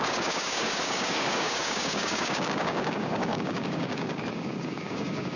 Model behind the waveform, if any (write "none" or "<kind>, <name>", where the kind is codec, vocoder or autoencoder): codec, DAC